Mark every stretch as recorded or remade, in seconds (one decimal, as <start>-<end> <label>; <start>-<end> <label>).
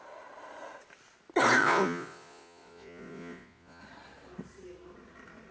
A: 0.0-1.6 recorded; 1.6-3.8 remade; 3.8-5.5 recorded